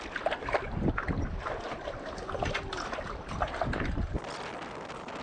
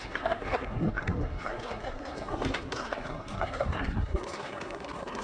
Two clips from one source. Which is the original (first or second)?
first